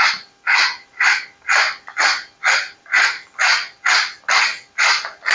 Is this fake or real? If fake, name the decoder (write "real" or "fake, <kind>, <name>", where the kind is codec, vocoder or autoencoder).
real